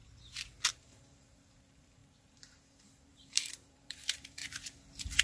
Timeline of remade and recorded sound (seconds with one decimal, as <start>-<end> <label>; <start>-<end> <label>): 0.0-0.7 recorded; 0.7-4.4 remade; 4.4-5.2 recorded